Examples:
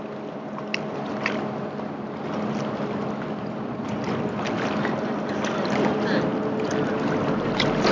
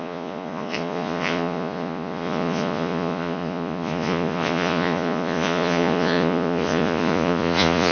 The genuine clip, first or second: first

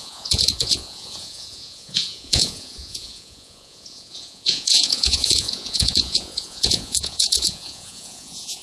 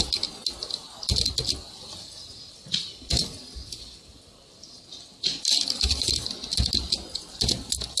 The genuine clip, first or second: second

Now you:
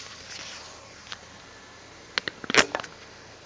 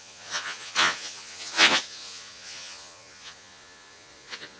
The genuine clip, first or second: first